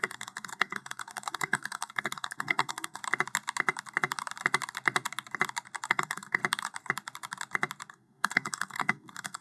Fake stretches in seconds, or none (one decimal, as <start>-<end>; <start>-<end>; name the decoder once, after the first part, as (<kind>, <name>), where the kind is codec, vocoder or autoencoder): 0.0-3.0 (codec, SNAC); 5.9-6.4; 7.9-9.4